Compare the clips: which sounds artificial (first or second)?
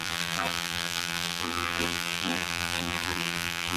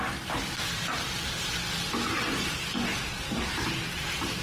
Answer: first